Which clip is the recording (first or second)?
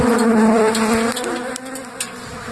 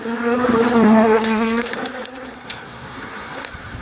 first